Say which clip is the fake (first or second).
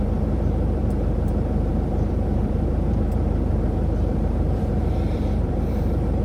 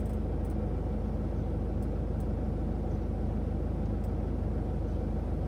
first